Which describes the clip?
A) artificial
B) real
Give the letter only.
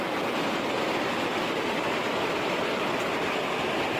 A